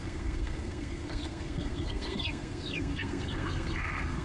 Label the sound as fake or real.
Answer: fake